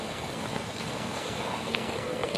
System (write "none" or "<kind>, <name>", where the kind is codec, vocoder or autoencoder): codec, SNAC